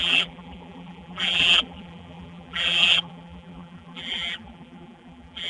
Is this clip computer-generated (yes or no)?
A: yes